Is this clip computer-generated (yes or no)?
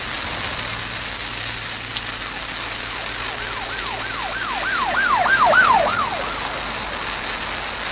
no